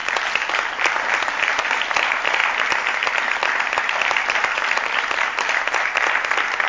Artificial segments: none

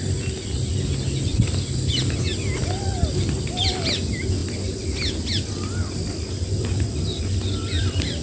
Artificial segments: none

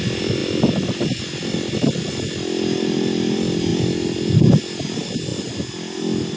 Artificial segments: none

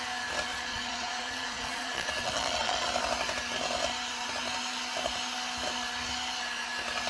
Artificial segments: 0.5-2.9 (vocoder, Vocos)

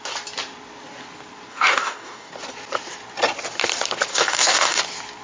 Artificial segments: 1.5-2.3 (codec, DAC); 4.1-4.8